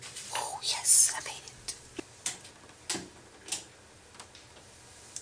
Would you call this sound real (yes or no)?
yes